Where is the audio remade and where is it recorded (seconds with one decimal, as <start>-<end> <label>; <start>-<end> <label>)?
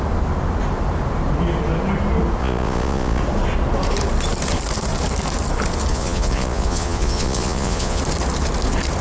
0.0-2.4 recorded; 2.4-3.2 remade; 3.2-5.9 recorded; 5.9-8.0 remade; 8.0-9.0 recorded